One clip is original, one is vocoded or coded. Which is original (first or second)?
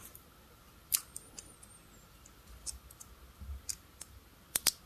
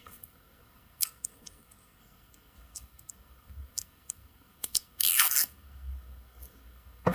first